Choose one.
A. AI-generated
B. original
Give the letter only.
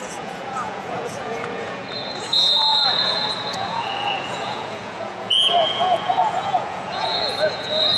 A